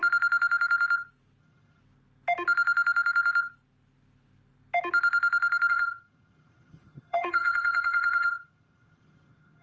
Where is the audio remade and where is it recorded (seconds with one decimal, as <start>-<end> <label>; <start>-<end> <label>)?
0.0-1.4 recorded; 1.4-1.8 remade; 1.8-5.7 recorded; 5.7-9.6 remade